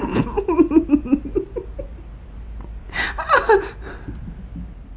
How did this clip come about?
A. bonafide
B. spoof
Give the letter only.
A